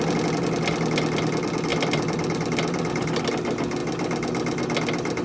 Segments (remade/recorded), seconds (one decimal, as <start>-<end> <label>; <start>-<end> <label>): 0.0-1.7 recorded; 1.7-3.2 remade; 3.2-3.8 recorded; 3.8-5.2 remade